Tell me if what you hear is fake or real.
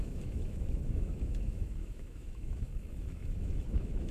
fake